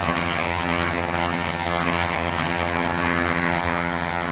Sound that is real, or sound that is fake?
fake